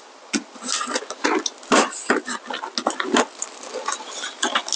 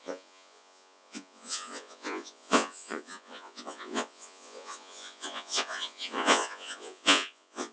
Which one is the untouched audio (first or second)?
first